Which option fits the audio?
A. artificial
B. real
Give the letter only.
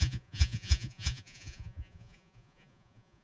A